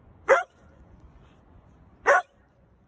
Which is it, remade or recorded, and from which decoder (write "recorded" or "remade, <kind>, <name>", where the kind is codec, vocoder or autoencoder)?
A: remade, vocoder, Vocos